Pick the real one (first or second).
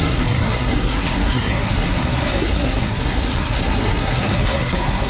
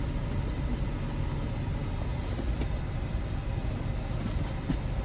second